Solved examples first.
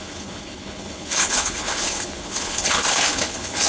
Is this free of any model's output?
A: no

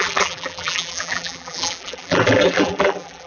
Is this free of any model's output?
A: no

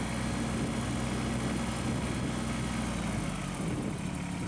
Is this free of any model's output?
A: yes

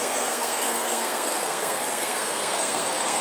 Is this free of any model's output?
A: no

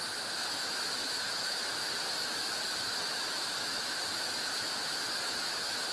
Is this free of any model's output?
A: no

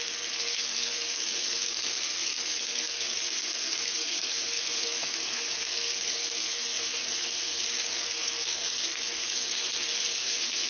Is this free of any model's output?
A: no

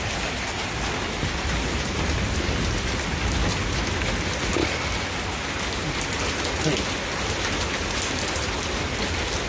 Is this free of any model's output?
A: yes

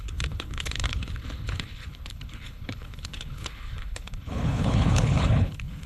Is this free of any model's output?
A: no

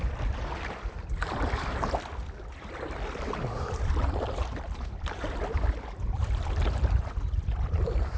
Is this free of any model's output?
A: no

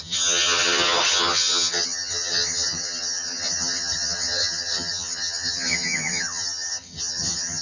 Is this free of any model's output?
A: no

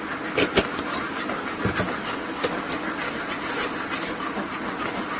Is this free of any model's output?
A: yes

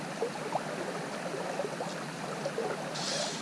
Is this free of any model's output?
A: yes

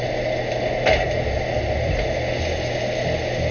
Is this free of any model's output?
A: yes